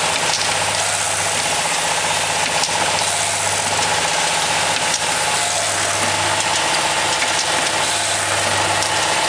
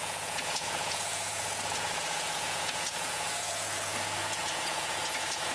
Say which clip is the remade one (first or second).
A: second